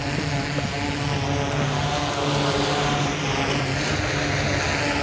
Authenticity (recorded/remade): recorded